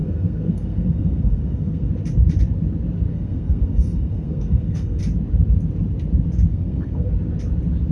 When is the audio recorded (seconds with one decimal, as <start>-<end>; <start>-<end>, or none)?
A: 1.9-3.1; 5.0-6.5; 7.1-7.9